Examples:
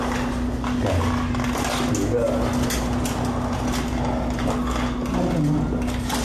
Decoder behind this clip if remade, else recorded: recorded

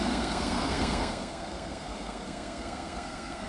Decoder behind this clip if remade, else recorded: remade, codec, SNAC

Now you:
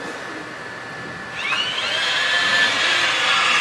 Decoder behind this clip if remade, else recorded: recorded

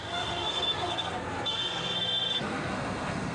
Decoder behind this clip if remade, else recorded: remade, codec, SNAC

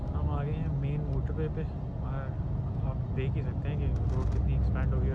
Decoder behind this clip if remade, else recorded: recorded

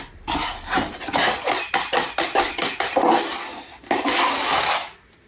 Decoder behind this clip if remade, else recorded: recorded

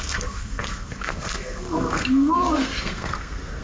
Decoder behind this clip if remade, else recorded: remade, codec, SNAC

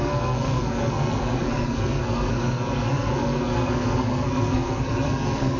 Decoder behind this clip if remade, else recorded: remade, codec, SNAC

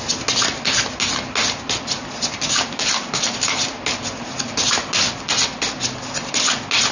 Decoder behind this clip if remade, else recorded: recorded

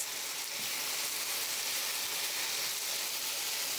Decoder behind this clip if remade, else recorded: recorded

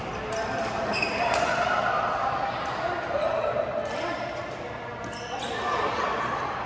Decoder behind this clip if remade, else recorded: recorded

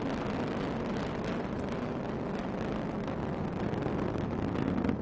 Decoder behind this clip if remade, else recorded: recorded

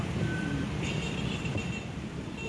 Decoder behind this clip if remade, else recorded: recorded